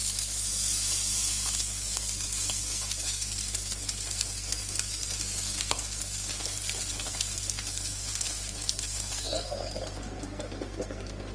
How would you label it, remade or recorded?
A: remade